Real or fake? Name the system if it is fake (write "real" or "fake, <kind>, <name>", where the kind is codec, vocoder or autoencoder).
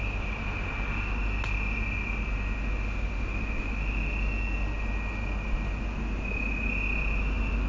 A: real